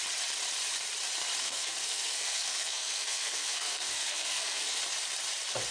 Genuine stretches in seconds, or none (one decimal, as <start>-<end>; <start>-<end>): 0.0-1.4; 4.8-5.7